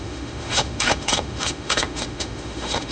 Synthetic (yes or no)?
yes